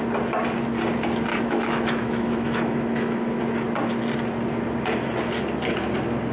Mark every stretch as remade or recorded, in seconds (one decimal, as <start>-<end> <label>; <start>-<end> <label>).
0.0-1.3 recorded; 1.3-3.4 remade; 3.4-6.3 recorded

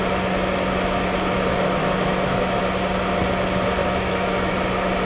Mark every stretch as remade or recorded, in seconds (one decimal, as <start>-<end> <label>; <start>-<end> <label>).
0.0-1.8 recorded; 1.8-2.6 remade; 2.6-3.8 recorded; 3.8-4.5 remade; 4.5-5.0 recorded

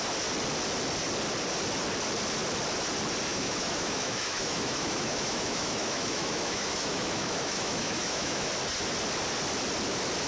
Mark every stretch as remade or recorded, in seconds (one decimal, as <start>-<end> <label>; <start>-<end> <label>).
0.0-3.3 recorded; 3.3-8.5 remade; 8.5-10.3 recorded